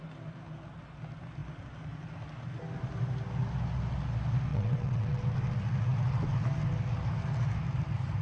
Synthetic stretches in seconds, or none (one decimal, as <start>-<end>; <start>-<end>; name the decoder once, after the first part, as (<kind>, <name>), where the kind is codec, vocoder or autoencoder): 4.5-5.2 (vocoder, WaveNeXt)